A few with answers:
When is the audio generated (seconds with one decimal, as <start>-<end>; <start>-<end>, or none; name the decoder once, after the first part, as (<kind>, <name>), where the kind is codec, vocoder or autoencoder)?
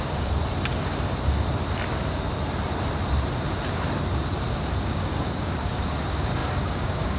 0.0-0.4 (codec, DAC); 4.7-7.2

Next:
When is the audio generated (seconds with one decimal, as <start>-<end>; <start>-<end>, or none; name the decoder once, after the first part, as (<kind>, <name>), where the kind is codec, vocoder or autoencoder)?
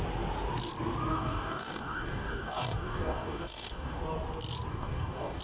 1.1-4.0 (codec, DAC); 4.7-5.4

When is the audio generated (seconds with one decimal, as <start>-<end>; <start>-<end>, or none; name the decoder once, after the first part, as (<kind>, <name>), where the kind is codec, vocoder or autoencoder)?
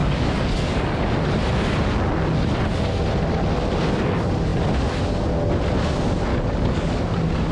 0.0-1.0 (codec, DAC); 6.3-7.0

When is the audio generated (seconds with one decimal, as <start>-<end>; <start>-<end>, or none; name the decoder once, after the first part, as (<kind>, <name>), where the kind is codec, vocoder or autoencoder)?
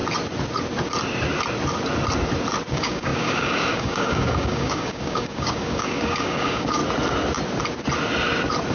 2.7-6.8 (codec, DAC)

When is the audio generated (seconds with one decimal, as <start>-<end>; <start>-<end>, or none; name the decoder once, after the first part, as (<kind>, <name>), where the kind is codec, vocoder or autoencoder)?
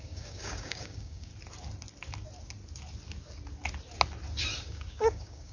0.0-1.3 (codec, DAC); 4.6-5.5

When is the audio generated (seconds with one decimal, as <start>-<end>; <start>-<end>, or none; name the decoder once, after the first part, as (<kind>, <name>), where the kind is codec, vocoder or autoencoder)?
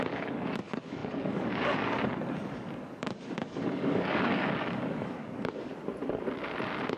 0.0-5.7 (codec, DAC)